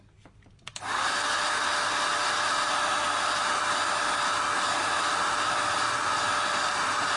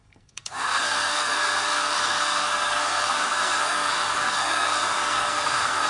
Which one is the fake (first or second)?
second